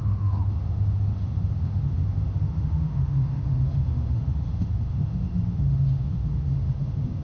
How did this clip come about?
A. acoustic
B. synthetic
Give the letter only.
B